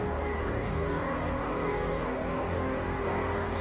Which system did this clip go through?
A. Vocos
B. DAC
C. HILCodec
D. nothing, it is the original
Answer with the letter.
B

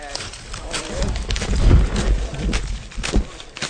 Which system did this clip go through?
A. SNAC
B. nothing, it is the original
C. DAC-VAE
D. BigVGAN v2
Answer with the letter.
B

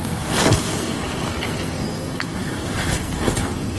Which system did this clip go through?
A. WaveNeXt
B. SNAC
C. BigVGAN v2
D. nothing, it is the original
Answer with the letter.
B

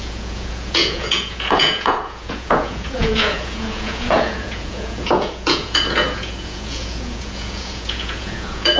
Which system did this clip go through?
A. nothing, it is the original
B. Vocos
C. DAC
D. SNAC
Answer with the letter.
B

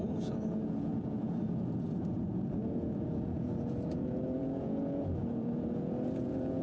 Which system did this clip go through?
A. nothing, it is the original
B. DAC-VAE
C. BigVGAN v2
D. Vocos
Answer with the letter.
D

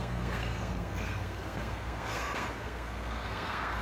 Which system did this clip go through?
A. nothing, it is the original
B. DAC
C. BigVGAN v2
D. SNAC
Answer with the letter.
D